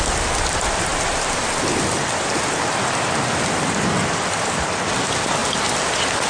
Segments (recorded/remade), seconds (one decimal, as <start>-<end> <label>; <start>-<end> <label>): 0.0-5.4 remade; 5.4-6.3 recorded